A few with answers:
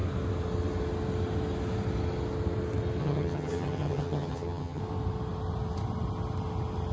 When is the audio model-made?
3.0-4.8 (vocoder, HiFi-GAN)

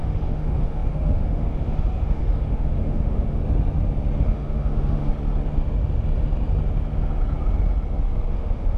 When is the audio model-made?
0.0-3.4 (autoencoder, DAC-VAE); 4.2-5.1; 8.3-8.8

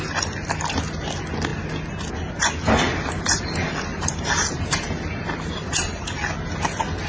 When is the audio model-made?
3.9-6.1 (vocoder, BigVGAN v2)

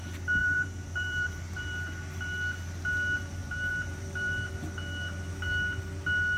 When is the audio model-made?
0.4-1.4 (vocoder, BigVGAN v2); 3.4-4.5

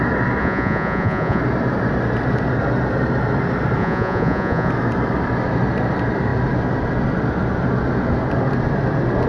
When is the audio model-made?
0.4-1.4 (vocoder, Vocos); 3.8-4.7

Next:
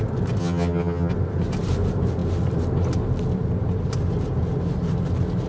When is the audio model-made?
0.4-1.1 (vocoder, HiFi-GAN)